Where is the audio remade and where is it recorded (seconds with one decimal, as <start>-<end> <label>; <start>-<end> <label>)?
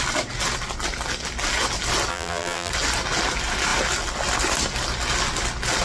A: 0.0-2.1 recorded; 2.1-2.7 remade; 2.7-5.8 recorded